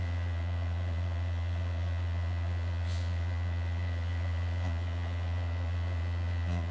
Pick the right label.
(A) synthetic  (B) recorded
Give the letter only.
A